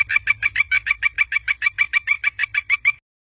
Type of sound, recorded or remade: recorded